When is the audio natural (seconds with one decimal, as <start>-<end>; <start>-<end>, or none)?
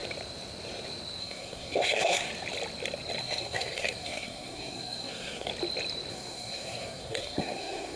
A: 0.0-1.2; 2.3-3.2; 5.5-6.1